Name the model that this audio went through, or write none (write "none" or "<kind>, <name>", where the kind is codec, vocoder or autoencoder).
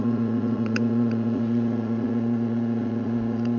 vocoder, Vocos